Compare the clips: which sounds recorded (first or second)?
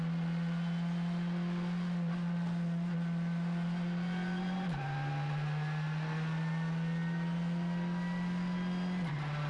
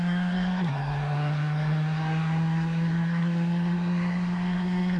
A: first